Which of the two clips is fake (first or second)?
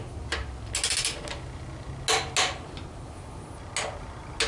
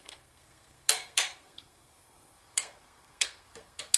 second